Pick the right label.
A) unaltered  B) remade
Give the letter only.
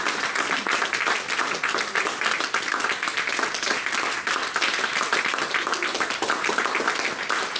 A